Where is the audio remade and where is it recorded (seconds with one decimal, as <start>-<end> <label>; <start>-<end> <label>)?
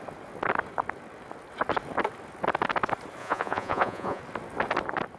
0.0-3.2 recorded; 3.2-4.2 remade; 4.2-5.2 recorded